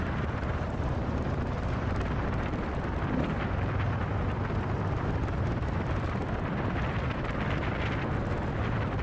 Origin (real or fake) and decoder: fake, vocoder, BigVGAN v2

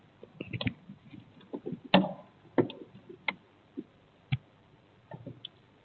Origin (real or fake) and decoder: real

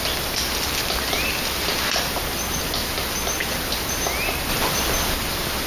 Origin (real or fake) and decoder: real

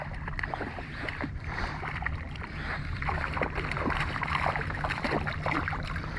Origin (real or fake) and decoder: fake, vocoder, BigVGAN v2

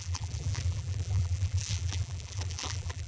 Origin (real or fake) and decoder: fake, vocoder, BigVGAN v2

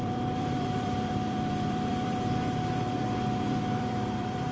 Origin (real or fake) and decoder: fake, vocoder, BigVGAN v2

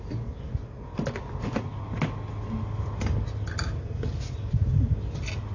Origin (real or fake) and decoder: real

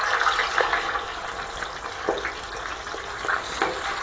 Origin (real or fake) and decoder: real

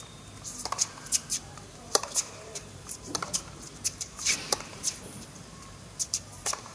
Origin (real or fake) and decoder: fake, vocoder, BigVGAN v2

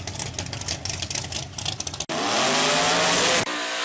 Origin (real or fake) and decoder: real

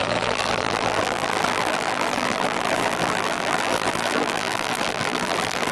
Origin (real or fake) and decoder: fake, vocoder, BigVGAN v2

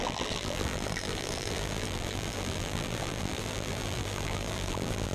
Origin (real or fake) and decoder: fake, vocoder, BigVGAN v2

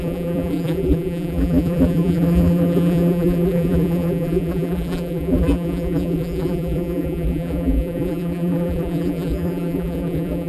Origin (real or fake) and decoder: fake, vocoder, BigVGAN v2